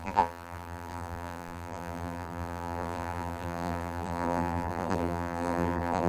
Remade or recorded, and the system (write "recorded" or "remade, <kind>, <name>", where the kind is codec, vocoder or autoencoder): remade, vocoder, BigVGAN v2